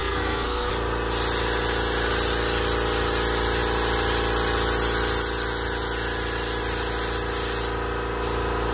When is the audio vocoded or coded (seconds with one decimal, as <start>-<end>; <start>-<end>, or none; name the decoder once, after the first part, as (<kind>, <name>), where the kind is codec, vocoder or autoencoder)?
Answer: 0.0-0.7 (codec, SNAC)